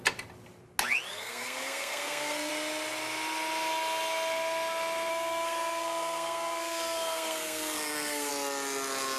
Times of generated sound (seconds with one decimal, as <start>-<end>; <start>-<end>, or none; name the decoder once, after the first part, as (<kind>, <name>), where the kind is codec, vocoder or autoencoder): 1.1-2.5 (codec, SNAC); 5.1-8.3